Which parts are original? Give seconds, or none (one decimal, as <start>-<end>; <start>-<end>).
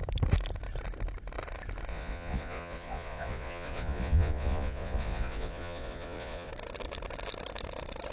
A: 0.0-1.9; 6.5-8.1